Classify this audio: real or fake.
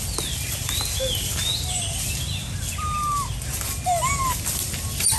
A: real